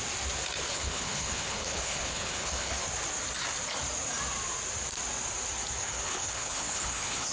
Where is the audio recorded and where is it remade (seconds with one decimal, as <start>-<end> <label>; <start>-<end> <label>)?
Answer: 0.0-0.7 recorded; 0.7-2.8 remade; 2.8-5.8 recorded; 5.8-7.3 remade